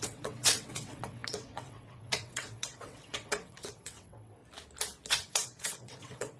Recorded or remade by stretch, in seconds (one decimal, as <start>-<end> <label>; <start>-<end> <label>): 0.0-4.4 remade; 4.4-5.1 recorded; 5.1-6.4 remade

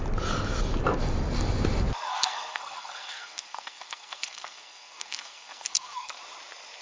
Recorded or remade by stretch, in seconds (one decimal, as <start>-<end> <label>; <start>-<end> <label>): 0.0-2.1 recorded; 2.1-6.2 remade; 6.2-6.8 recorded

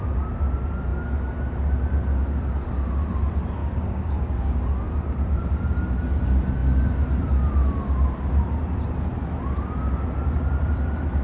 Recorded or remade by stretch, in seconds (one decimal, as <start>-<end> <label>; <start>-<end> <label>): 0.0-3.6 recorded; 3.6-4.6 remade; 4.6-11.2 recorded

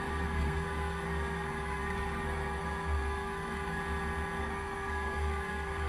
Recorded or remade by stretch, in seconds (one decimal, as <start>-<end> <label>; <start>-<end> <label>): 0.0-3.8 remade; 3.8-4.4 recorded; 4.4-5.9 remade